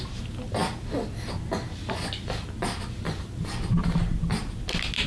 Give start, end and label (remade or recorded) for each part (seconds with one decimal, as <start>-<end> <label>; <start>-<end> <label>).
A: 0.0-5.1 recorded

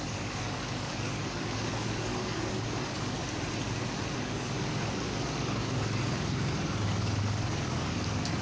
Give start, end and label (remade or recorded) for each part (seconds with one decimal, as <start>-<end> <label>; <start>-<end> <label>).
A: 0.0-3.2 remade; 3.2-4.2 recorded; 4.2-8.4 remade

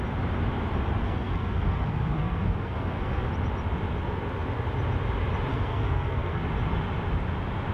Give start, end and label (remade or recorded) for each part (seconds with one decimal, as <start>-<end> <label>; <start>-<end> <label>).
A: 0.0-1.0 recorded; 1.0-3.3 remade; 3.3-5.5 recorded; 5.5-6.4 remade; 6.4-7.7 recorded

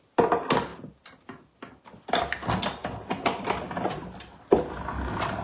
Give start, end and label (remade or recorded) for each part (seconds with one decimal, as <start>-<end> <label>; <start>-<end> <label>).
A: 0.0-5.4 recorded